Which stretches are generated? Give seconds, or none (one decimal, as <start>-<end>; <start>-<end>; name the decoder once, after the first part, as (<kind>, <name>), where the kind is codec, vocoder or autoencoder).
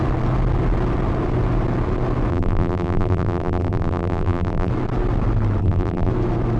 2.3-4.7 (vocoder, BigVGAN v2); 5.6-6.1